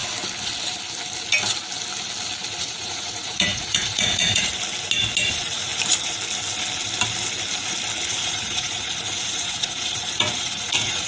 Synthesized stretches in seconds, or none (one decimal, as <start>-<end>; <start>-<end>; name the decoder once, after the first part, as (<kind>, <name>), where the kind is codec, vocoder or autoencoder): 2.7-4.5 (vocoder, Vocos); 5.3-5.7; 8.1-11.1